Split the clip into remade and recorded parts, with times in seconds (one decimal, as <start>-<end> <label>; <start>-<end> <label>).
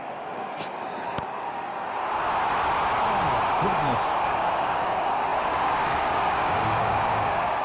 0.0-1.7 remade; 1.7-4.1 recorded; 4.1-7.6 remade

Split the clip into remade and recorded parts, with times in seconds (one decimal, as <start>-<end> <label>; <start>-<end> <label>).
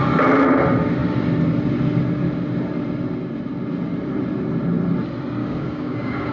0.0-5.4 recorded; 5.4-6.3 remade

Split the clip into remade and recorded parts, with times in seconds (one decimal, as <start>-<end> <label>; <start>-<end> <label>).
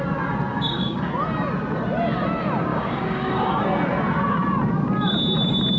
0.0-0.5 recorded; 0.5-1.1 remade; 1.1-2.7 recorded; 2.7-3.6 remade; 3.6-5.8 recorded